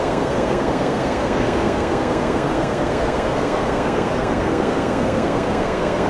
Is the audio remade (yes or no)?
yes